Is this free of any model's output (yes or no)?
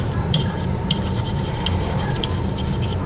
no